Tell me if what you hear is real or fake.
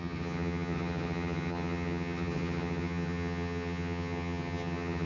fake